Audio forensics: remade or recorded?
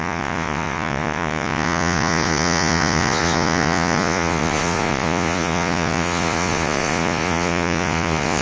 remade